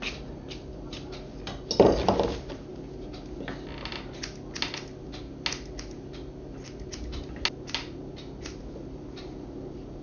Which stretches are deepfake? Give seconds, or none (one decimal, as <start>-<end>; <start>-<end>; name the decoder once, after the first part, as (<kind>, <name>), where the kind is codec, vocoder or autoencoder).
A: none